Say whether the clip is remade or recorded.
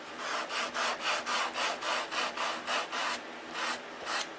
recorded